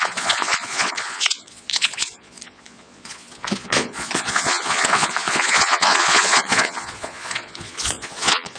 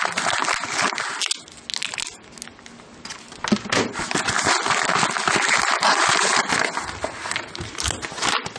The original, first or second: second